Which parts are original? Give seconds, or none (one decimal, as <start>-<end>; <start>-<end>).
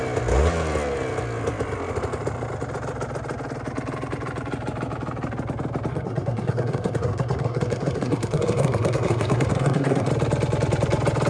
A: 0.0-5.9; 10.1-11.3